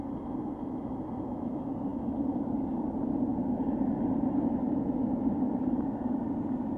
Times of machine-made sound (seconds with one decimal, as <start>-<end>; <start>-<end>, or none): none